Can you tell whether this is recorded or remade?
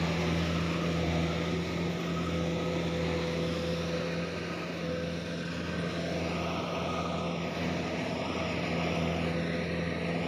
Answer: recorded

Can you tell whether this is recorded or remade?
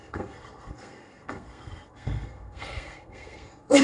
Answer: remade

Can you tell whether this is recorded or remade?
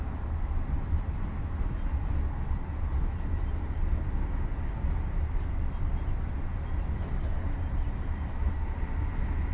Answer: recorded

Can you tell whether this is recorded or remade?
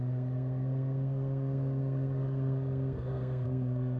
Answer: remade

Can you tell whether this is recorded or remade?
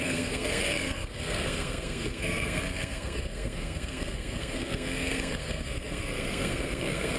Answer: remade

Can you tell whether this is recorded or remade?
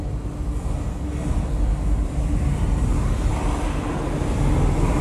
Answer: recorded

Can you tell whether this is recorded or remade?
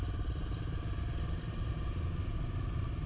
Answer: recorded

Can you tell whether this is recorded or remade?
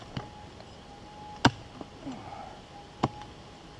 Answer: recorded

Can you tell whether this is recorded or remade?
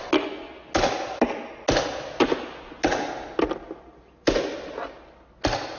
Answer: recorded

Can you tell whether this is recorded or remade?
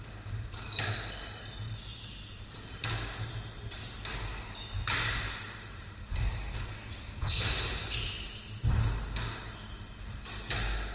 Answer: recorded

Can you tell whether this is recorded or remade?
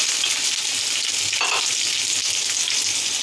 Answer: recorded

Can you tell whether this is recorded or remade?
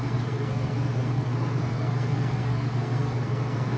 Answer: remade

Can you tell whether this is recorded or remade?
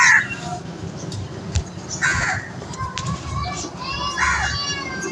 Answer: recorded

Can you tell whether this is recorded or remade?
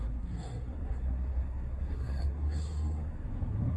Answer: remade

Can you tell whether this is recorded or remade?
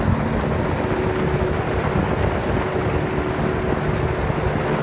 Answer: recorded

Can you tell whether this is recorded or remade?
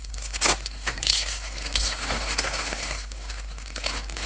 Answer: remade